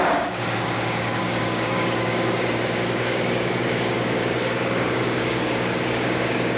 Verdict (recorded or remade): remade